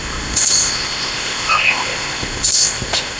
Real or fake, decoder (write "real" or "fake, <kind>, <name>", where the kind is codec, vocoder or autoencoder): fake, codec, ZipCodec